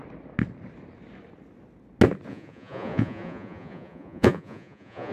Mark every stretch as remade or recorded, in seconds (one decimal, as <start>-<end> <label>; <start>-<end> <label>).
0.0-2.3 recorded; 2.3-5.1 remade